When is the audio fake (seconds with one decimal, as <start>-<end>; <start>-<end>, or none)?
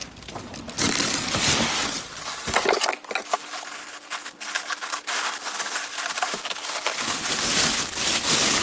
0.8-1.8; 6.7-8.6